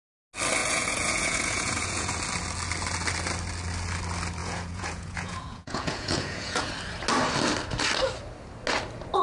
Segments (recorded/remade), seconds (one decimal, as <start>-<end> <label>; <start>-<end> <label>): 0.0-0.6 recorded; 0.6-2.1 remade; 2.1-4.4 recorded; 4.4-6.7 remade; 6.7-9.2 recorded